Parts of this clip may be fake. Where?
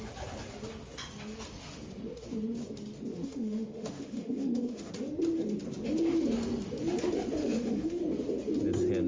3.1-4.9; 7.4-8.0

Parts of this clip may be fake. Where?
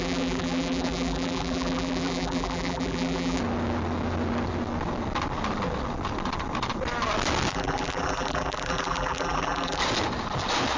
0.0-3.4; 7.5-9.8